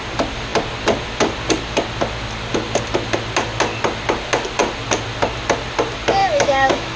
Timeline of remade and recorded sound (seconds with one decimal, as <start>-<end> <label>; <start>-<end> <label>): 0.0-6.2 recorded; 6.2-7.0 remade